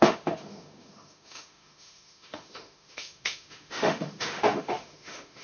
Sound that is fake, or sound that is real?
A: fake